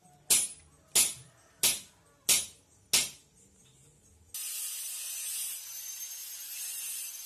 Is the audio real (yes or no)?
yes